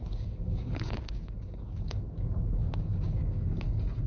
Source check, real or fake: fake